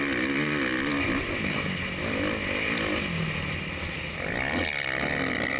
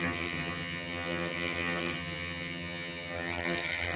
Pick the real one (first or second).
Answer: first